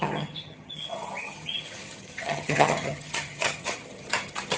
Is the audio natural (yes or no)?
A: no